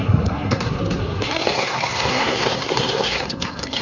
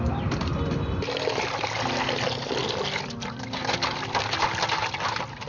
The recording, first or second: second